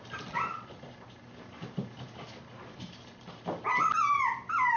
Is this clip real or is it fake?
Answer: real